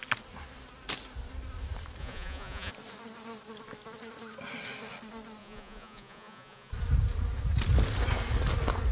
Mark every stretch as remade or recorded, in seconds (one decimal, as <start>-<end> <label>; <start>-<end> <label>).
0.0-2.0 recorded; 2.0-2.7 remade; 2.7-5.4 recorded; 5.4-6.7 remade; 6.7-8.9 recorded